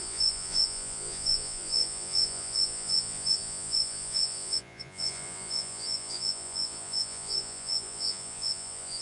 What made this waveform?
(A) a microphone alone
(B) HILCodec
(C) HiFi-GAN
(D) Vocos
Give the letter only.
D